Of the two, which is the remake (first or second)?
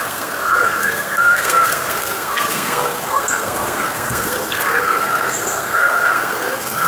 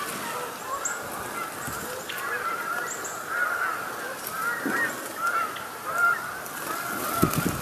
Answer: first